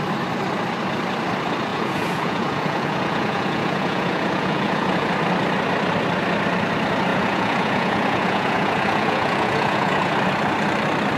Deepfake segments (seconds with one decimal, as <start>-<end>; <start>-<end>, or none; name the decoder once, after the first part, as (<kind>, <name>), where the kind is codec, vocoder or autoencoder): 1.7-5.1 (vocoder, Vocos); 7.1-10.1